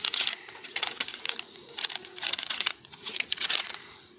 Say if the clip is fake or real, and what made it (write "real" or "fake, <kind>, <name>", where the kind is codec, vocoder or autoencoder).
fake, vocoder, Vocos